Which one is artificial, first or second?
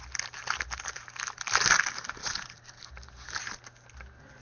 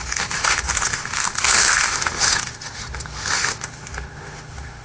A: second